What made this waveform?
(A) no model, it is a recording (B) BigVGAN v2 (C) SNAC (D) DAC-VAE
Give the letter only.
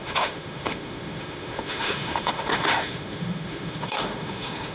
D